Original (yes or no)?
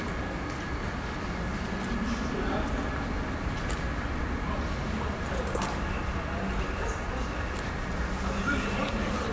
yes